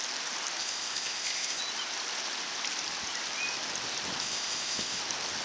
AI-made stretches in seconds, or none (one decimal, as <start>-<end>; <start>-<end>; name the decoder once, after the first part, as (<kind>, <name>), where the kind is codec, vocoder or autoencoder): 0.6-1.6 (codec, ZipCodec); 4.2-5.0